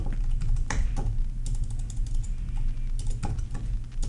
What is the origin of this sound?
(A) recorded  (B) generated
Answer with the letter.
A